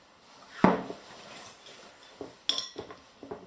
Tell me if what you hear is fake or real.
real